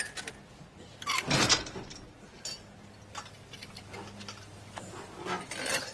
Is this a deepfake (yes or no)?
no